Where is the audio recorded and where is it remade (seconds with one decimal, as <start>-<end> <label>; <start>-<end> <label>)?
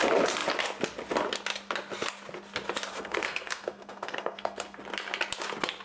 0.0-2.9 recorded; 2.9-4.8 remade; 4.8-5.8 recorded